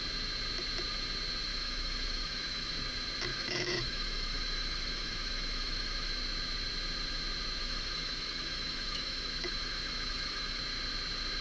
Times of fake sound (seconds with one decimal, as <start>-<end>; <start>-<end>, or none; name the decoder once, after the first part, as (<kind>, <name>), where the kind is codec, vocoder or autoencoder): 1.5-2.8 (autoencoder, DAC-VAE); 3.3-6.1; 7.6-10.6